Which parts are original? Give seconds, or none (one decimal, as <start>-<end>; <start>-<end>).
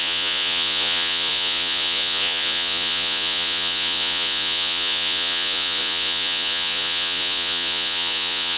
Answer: none